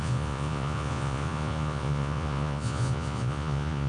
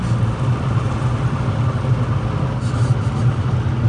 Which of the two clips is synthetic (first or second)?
first